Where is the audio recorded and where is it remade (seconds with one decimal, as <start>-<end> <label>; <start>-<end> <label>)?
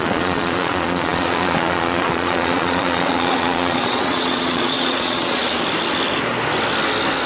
0.0-5.4 remade; 5.4-7.3 recorded